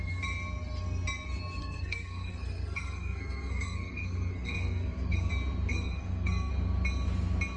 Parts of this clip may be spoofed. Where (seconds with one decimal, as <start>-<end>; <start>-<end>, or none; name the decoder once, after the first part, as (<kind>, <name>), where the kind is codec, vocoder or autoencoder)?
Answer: 1.6-5.3 (codec, SNAC); 5.7-6.5